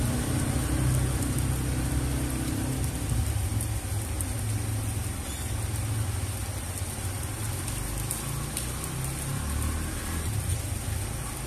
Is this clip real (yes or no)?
yes